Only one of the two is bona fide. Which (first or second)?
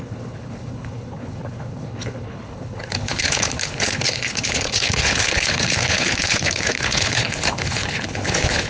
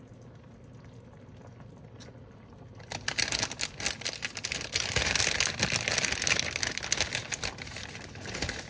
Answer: second